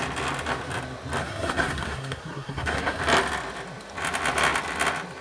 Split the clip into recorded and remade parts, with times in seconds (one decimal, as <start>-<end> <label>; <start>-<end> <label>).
0.0-1.2 recorded; 1.2-3.0 remade; 3.0-5.2 recorded